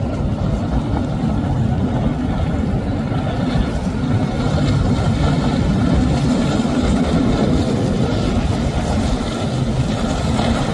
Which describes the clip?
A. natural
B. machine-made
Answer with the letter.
A